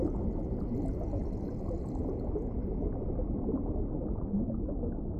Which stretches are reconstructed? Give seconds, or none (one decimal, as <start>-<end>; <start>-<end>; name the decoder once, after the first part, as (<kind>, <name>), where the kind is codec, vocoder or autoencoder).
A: none